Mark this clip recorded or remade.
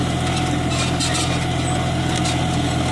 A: recorded